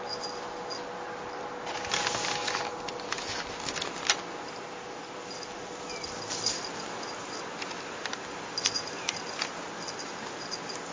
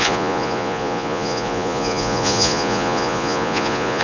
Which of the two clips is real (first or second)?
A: first